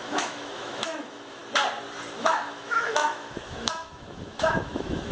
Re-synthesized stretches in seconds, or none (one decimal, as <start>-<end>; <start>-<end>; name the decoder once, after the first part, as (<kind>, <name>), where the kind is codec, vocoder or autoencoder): 0.0-1.4 (autoencoder, DAC-VAE); 2.2-5.1